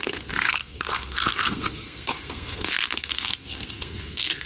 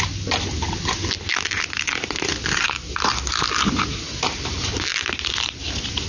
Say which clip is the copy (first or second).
first